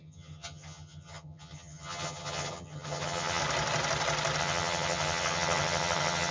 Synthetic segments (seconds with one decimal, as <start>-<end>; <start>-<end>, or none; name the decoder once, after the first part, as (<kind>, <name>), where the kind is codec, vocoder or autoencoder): 0.0-3.4 (vocoder, HiFi-GAN); 4.4-6.3